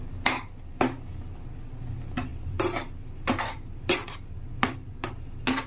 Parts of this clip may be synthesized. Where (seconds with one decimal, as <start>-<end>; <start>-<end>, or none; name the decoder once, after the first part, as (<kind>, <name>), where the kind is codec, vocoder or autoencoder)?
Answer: none